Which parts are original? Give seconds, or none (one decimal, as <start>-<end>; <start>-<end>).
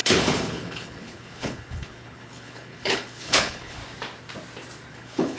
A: 3.8-4.9